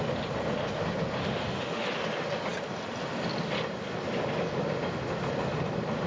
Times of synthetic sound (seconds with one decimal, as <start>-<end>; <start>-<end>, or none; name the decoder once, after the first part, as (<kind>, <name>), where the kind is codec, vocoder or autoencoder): 1.2-1.9 (autoencoder, DAC-VAE)